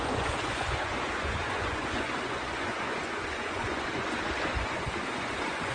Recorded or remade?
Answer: remade